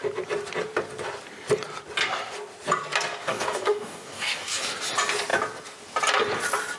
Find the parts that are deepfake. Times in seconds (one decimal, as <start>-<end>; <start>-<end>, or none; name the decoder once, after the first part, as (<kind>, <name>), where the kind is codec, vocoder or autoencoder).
3.2-4.6 (codec, DAC)